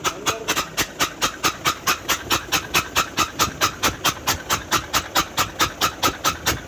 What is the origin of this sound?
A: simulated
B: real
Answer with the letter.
B